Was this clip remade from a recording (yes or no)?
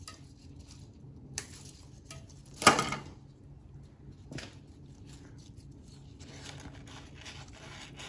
no